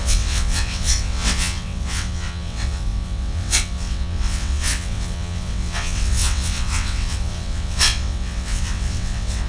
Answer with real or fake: fake